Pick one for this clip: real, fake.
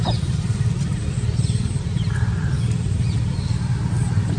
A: real